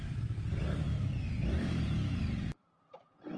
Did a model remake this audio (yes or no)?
yes